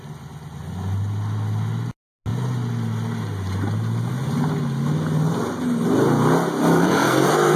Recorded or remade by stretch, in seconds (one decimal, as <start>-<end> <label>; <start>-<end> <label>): 0.0-6.7 recorded; 6.7-7.6 remade